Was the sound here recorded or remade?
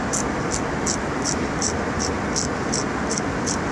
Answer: remade